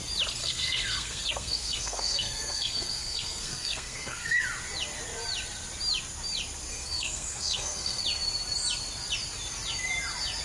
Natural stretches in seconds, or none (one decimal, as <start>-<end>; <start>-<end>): 0.0-0.4; 4.4-6.7; 8.0-10.4